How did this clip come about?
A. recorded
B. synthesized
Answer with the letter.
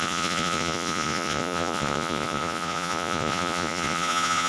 B